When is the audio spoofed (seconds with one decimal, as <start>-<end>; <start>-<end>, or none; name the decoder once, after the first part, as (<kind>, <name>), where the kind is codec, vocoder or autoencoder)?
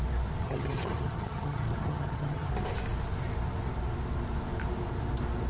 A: 0.4-2.5 (vocoder, HiFi-GAN)